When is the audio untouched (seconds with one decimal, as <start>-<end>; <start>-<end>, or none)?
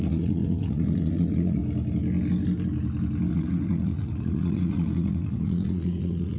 1.6-3.3